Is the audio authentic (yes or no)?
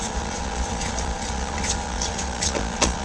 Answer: no